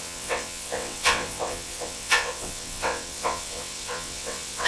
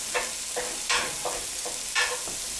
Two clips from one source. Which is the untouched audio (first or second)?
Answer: second